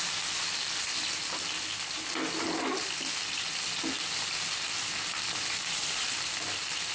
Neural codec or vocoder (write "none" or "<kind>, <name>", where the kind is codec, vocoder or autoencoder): none